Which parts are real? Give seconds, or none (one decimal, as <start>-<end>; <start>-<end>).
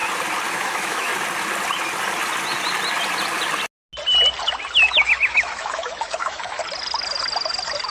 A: 0.0-0.5; 1.1-4.9; 6.6-7.9